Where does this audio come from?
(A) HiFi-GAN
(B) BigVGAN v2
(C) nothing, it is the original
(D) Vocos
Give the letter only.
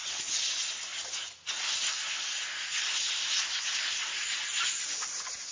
C